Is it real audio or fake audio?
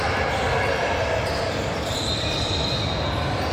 real